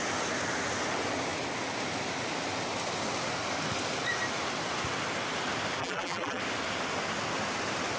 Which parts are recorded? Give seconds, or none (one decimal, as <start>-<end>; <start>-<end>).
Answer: 0.0-5.8; 6.4-8.0